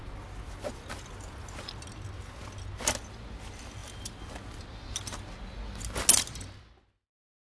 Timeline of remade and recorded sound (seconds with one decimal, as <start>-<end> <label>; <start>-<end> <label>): 0.0-7.4 recorded